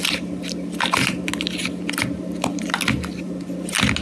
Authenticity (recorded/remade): recorded